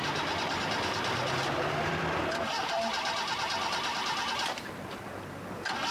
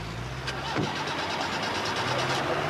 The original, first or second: second